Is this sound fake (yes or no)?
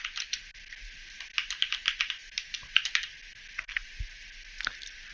no